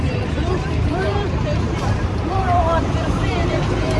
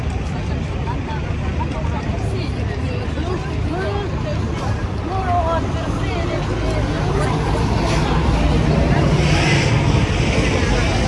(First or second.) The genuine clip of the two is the second